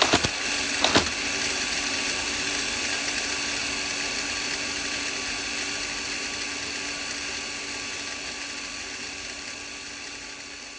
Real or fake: real